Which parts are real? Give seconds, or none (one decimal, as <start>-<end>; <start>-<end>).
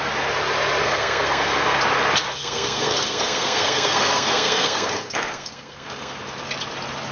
0.0-0.8; 1.8-2.4; 6.2-7.1